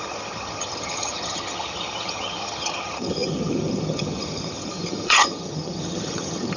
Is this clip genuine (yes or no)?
no